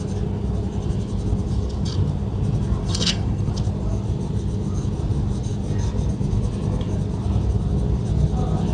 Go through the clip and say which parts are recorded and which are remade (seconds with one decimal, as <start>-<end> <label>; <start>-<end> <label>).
0.0-2.8 recorded; 2.8-3.5 remade; 3.5-8.7 recorded